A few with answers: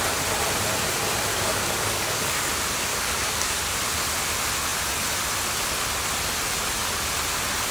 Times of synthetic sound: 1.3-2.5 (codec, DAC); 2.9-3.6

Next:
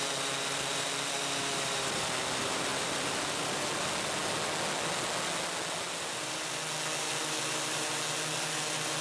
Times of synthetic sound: none

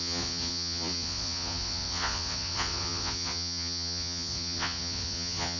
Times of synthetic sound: 0.0-5.6 (vocoder, Vocos)

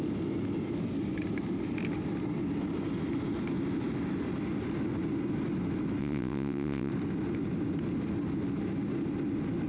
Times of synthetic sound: 6.0-6.9 (vocoder, WaveNeXt)

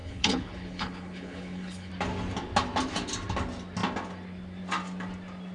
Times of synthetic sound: 0.0-1.9 (codec, HILCodec)

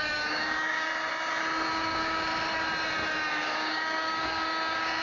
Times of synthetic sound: 0.0-0.9 (codec, DAC); 1.7-2.3; 3.3-5.0

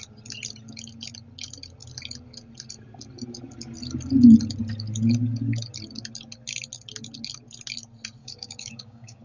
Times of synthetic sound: 8.2-9.2 (codec, DAC)

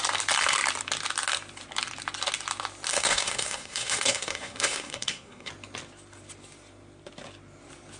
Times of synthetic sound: 2.9-5.5 (codec, SNAC)